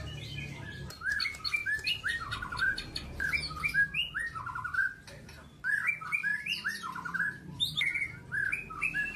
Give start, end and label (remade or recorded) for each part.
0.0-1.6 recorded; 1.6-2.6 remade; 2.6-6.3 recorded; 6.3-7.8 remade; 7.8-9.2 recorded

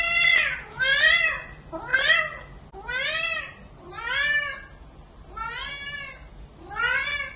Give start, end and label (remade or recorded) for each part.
0.0-7.4 recorded

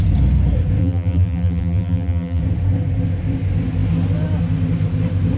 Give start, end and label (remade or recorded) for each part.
0.0-0.8 recorded; 0.8-2.4 remade; 2.4-5.4 recorded

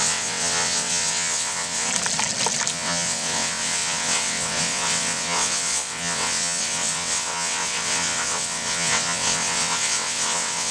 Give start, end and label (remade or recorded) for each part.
0.0-1.9 remade; 1.9-2.7 recorded; 2.7-10.7 remade

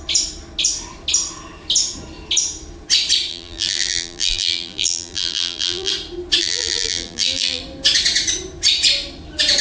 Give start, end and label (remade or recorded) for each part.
0.0-3.3 recorded; 3.3-5.9 remade; 5.9-6.4 recorded; 6.4-7.6 remade; 7.6-9.6 recorded

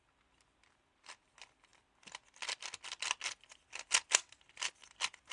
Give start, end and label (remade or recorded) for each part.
0.0-5.3 recorded

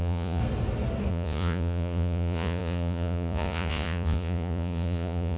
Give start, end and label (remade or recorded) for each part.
0.0-0.4 remade; 0.4-1.1 recorded; 1.1-5.4 remade